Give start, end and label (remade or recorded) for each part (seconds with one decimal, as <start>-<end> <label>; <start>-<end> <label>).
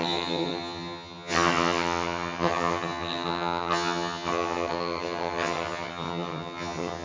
0.0-7.0 remade